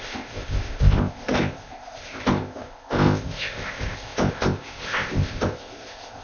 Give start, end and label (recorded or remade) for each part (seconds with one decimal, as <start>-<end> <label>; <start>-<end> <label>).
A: 0.0-6.2 remade